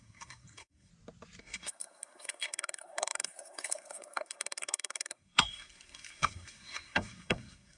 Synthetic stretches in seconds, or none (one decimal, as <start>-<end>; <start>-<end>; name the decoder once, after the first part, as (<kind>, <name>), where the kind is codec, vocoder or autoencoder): 0.0-0.9 (codec, SNAC); 1.4-7.8